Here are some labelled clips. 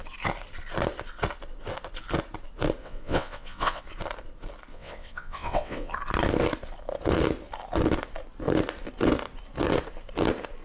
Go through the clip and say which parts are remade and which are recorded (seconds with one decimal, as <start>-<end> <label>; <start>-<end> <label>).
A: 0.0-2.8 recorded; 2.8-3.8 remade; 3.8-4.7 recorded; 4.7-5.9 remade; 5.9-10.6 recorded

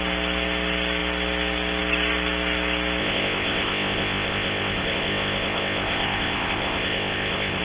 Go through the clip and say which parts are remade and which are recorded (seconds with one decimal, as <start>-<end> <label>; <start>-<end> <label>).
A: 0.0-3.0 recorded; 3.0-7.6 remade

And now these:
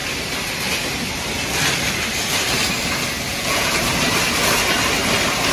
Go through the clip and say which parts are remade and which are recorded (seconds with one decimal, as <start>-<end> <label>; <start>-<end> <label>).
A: 0.0-3.3 recorded; 3.3-3.8 remade; 3.8-5.5 recorded

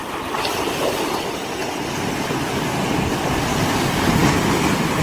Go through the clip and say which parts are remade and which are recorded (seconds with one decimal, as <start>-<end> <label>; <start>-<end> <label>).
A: 0.0-5.0 recorded

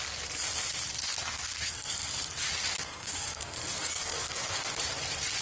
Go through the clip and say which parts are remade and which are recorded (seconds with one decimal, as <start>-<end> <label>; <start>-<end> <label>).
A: 0.0-1.2 recorded; 1.2-1.9 remade; 1.9-2.7 recorded; 2.7-4.7 remade; 4.7-5.4 recorded